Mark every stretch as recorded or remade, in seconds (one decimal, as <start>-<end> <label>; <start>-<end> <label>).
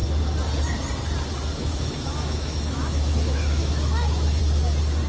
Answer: 0.0-1.6 recorded; 1.6-4.4 remade; 4.4-5.1 recorded